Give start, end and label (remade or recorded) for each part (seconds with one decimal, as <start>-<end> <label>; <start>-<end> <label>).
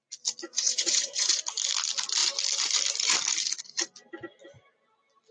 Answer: 0.0-0.5 recorded; 0.5-1.4 remade; 1.4-5.3 recorded